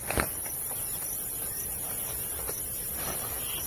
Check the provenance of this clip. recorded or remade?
recorded